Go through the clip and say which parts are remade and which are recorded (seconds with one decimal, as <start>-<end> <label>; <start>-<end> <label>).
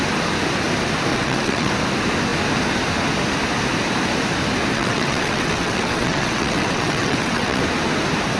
0.0-1.1 recorded; 1.1-1.7 remade; 1.7-4.7 recorded; 4.7-7.6 remade; 7.6-8.4 recorded